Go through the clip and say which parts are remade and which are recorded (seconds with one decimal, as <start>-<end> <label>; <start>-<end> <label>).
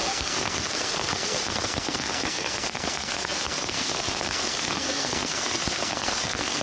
0.0-6.6 remade